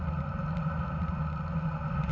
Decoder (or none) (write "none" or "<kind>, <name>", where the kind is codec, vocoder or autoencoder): none